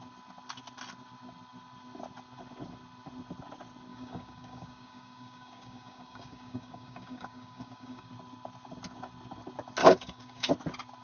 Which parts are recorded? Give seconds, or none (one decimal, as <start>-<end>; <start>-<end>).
0.0-3.9; 8.1-9.8; 10.5-11.0

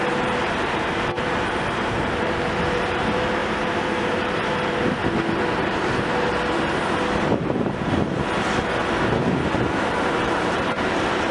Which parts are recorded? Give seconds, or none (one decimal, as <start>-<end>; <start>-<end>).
5.0-9.9

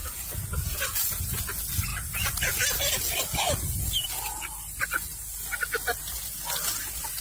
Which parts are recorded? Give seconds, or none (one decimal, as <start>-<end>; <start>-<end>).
1.4-7.2

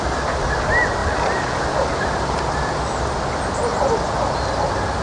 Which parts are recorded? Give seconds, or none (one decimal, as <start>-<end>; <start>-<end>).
0.0-1.0; 3.0-5.0